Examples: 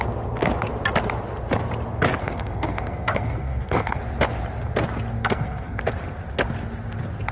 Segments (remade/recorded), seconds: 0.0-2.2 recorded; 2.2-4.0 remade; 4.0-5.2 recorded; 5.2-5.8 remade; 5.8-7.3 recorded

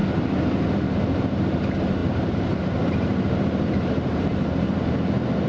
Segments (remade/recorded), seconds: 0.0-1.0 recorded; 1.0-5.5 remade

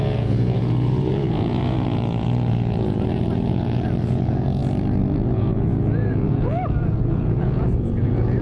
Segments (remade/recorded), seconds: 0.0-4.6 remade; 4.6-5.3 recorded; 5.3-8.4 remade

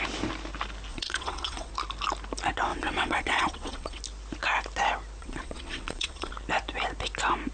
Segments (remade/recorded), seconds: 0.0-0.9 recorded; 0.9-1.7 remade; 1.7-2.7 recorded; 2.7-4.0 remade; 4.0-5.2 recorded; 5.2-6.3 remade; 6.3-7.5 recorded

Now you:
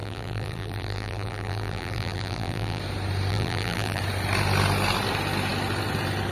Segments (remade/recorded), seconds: 0.0-2.8 remade; 2.8-3.3 recorded; 3.3-4.0 remade; 4.0-6.3 recorded